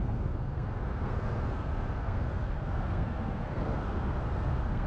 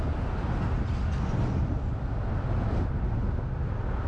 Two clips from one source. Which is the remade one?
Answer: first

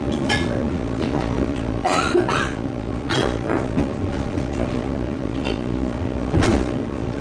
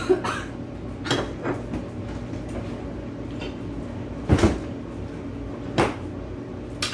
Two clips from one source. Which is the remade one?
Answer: first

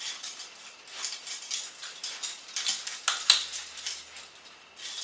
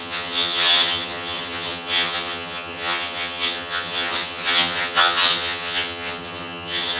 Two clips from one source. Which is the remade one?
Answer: second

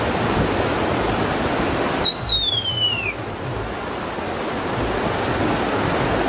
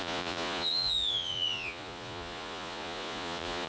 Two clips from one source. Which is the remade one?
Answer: second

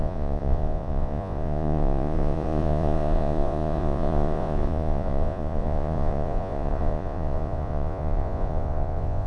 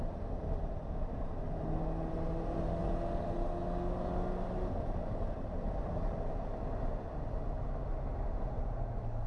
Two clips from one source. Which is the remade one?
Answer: first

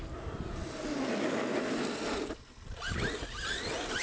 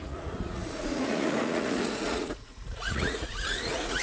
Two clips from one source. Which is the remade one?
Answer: second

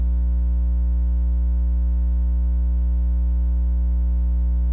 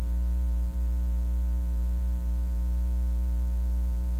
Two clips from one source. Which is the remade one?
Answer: second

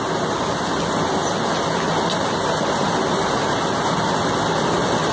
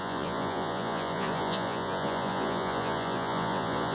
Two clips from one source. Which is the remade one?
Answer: second